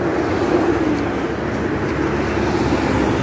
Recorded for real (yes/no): yes